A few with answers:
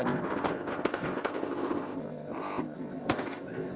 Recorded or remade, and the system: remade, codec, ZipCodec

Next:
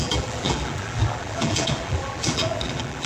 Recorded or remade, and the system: remade, vocoder, BigVGAN v2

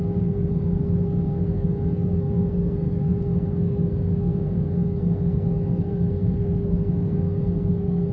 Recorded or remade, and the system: remade, codec, SNAC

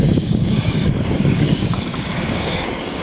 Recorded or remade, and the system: remade, codec, DAC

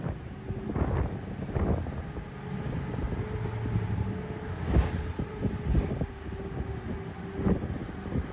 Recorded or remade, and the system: recorded